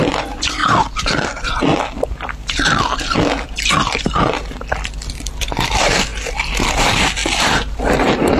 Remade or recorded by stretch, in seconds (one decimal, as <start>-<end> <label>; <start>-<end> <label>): 0.0-6.1 remade; 6.1-6.7 recorded; 6.7-8.4 remade